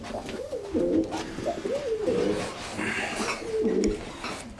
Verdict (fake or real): real